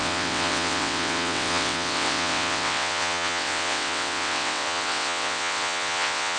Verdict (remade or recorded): remade